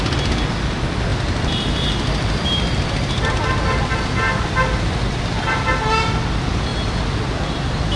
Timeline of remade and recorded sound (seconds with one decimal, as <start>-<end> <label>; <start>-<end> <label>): 0.0-1.1 recorded; 1.1-3.3 remade; 3.3-8.0 recorded